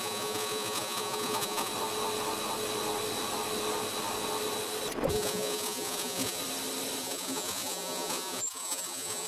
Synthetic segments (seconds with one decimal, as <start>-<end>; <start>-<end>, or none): 0.0-1.7; 5.1-6.4; 7.0-9.3